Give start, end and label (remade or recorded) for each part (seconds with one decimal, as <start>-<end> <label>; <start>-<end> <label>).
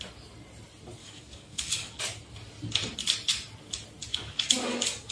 0.0-1.0 recorded; 1.0-2.0 remade; 2.0-4.1 recorded; 4.1-5.1 remade